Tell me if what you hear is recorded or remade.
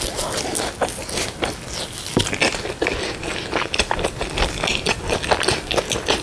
recorded